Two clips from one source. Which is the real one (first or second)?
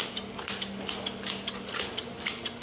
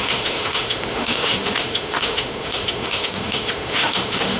first